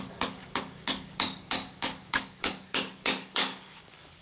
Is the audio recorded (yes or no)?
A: no